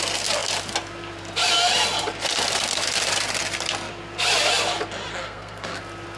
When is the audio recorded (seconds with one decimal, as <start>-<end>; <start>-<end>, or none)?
0.0-5.1; 5.8-6.2